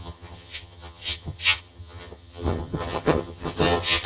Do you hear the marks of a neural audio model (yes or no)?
yes